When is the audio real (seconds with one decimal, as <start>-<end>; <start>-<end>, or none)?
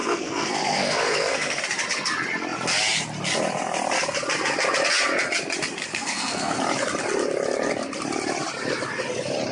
1.6-5.9; 6.6-9.5